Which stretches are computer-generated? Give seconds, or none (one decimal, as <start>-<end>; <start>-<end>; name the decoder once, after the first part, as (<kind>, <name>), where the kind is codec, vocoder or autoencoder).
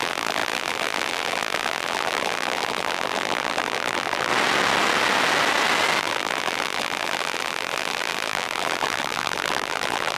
0.0-4.3 (vocoder, BigVGAN v2); 6.0-10.2